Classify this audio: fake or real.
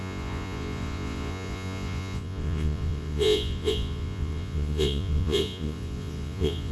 fake